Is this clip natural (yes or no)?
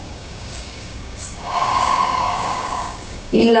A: no